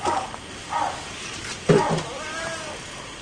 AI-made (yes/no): no